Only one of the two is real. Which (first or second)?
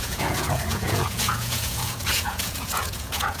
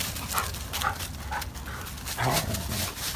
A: second